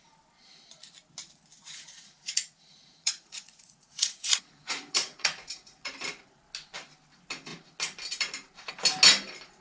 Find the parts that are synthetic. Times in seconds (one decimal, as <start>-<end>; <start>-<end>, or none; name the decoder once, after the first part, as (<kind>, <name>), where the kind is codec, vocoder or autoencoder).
1.6-5.9 (vocoder, Vocos)